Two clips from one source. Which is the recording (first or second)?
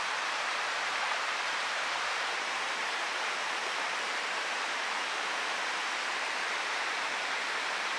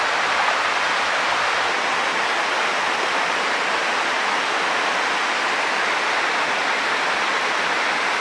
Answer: second